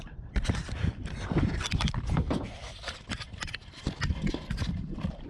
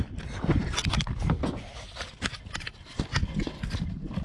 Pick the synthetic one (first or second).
first